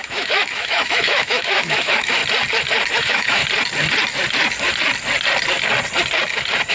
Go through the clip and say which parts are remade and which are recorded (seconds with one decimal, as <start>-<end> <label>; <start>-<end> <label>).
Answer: 0.0-2.2 remade; 2.2-3.0 recorded; 3.0-3.4 remade; 3.4-6.7 recorded